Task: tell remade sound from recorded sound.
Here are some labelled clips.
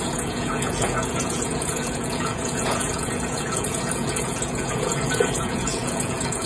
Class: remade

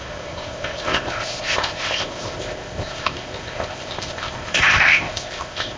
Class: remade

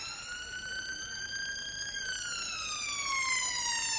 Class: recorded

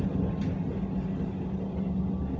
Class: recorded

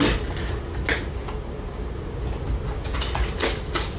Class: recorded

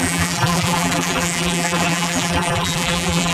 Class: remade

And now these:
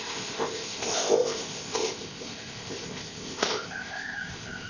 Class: remade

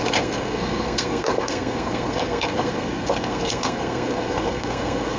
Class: remade